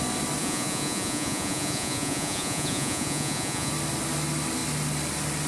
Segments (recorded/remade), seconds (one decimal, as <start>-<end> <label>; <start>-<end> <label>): 0.0-0.4 recorded; 0.4-3.7 remade; 3.7-5.5 recorded